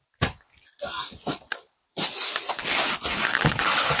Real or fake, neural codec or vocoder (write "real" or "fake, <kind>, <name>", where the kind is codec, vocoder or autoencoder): real